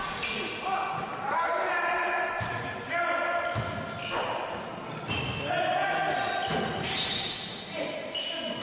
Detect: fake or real real